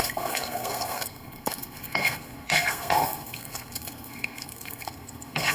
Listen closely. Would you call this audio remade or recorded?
remade